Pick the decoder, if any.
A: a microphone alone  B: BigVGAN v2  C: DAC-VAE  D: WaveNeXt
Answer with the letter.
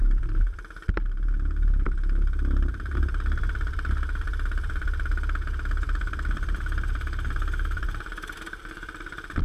B